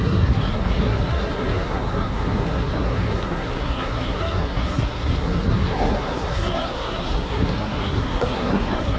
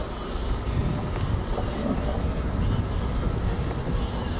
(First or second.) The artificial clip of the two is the first